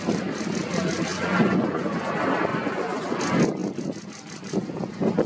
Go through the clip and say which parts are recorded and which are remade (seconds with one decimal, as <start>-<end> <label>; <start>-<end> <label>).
0.0-1.1 recorded; 1.1-2.1 remade; 2.1-2.5 recorded; 2.5-3.2 remade; 3.2-5.3 recorded